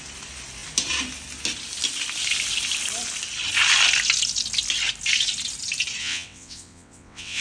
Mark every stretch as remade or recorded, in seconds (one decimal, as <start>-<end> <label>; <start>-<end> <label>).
0.0-6.0 recorded; 6.0-7.4 remade